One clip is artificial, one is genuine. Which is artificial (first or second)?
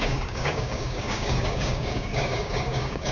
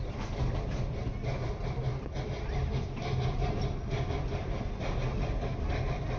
first